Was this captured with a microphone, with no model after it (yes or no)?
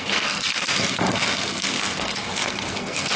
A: no